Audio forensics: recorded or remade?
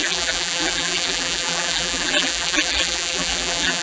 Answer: remade